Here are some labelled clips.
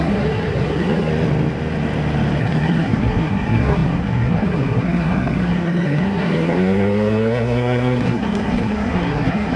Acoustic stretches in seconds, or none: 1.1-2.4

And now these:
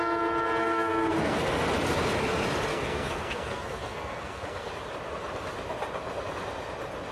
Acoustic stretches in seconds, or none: 0.0-0.6; 1.4-2.7; 4.7-7.1

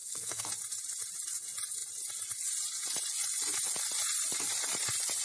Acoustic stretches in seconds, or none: 0.5-5.2

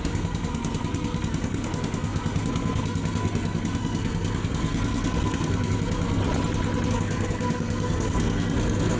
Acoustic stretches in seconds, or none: 6.2-6.9